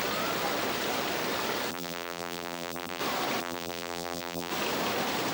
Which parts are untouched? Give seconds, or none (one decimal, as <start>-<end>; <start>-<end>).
0.0-1.7; 3.0-3.4; 4.5-5.3